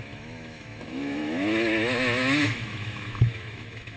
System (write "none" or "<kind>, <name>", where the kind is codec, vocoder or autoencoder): autoencoder, DAC-VAE